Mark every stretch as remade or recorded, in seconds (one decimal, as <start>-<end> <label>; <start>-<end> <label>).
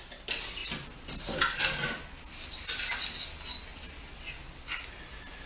0.0-5.5 recorded